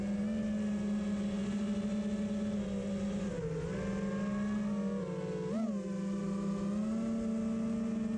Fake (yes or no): no